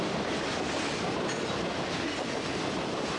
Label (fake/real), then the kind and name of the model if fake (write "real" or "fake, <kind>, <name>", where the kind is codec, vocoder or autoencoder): real